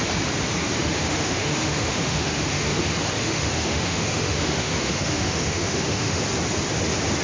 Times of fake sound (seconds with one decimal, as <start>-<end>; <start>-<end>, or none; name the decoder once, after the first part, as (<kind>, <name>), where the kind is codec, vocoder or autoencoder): 0.6-2.8 (autoencoder, DAC-VAE); 3.2-6.2

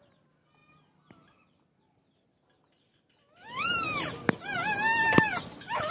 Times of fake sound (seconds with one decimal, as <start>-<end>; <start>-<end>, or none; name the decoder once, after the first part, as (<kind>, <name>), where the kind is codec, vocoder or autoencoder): none

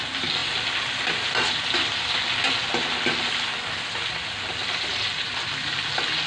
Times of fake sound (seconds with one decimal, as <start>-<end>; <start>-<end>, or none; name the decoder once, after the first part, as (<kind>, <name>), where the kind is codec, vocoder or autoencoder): 4.9-5.5 (vocoder, BigVGAN v2)

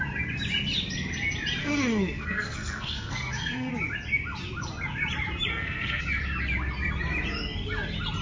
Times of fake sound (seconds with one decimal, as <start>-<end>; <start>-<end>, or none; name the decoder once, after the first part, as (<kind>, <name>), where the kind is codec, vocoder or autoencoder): 1.6-3.7 (codec, SNAC); 5.5-6.0

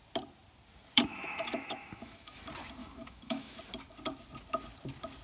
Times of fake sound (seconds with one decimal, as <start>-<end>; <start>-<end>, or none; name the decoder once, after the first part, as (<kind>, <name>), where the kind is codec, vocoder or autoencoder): 1.1-2.4 (autoencoder, DAC-VAE); 2.8-3.6